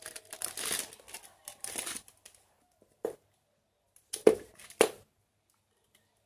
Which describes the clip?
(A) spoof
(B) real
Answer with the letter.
B